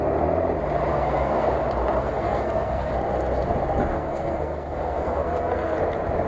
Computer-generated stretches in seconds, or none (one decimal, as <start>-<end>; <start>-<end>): 0.9-1.5; 2.0-2.9; 3.9-5.8